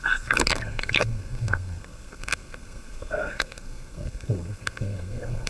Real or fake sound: fake